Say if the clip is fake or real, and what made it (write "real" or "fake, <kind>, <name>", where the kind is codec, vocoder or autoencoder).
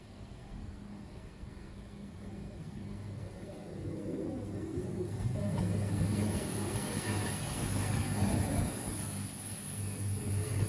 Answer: fake, codec, SNAC